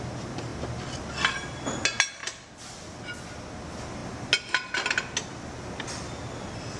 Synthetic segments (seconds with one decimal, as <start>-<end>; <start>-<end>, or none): 0.5-1.1